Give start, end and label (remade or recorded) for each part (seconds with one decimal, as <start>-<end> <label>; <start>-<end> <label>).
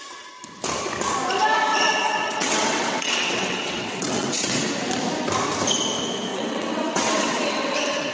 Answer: 0.0-1.7 recorded; 1.7-4.7 remade; 4.7-6.3 recorded; 6.3-8.1 remade